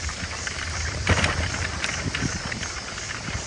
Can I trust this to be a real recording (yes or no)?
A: no